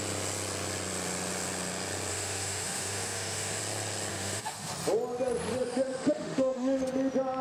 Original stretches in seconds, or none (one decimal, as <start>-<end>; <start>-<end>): 0.0-2.1; 3.6-4.1; 4.7-5.5; 6.8-7.4